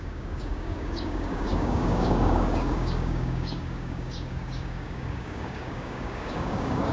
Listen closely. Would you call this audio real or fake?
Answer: fake